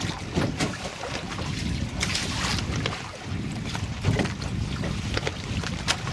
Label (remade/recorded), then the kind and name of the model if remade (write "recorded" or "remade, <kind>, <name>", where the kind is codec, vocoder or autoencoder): recorded